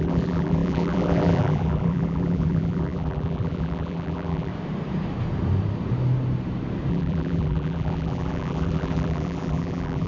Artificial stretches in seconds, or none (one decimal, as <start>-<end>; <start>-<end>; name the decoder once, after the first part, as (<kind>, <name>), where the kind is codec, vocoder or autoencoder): 0.0-4.5 (vocoder, BigVGAN v2); 6.9-10.1